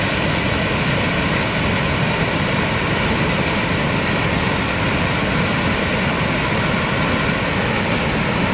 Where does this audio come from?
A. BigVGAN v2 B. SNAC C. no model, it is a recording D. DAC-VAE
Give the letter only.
C